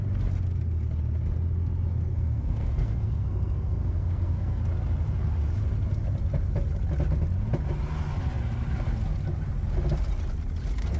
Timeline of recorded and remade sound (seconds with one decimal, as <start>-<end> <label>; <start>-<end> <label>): 0.0-2.1 recorded; 2.1-4.6 remade; 4.6-11.0 recorded